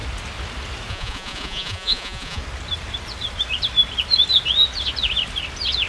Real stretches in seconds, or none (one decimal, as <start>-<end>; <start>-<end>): 0.0-0.9; 2.4-5.9